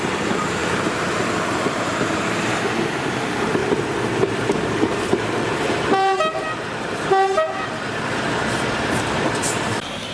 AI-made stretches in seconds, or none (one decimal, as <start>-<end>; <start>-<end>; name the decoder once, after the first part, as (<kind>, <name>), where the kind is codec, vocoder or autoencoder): 0.0-10.1 (vocoder, BigVGAN v2)